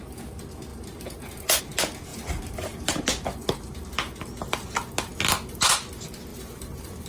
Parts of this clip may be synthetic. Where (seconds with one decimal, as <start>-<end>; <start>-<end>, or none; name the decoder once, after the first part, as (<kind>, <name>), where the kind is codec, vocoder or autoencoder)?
0.7-1.6 (vocoder, BigVGAN v2); 2.1-3.8; 6.3-7.1